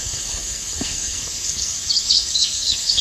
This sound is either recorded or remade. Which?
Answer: remade